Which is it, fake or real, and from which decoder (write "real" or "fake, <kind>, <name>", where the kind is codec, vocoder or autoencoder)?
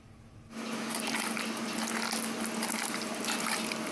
real